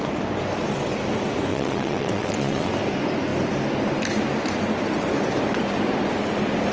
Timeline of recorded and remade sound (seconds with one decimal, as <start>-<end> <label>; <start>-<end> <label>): 0.0-1.5 recorded; 1.5-2.7 remade; 2.7-6.7 recorded